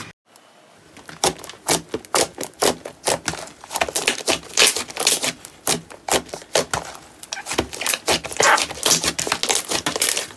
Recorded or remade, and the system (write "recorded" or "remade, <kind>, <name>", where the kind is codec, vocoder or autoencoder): recorded